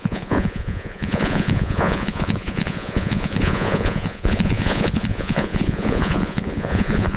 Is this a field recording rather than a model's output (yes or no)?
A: no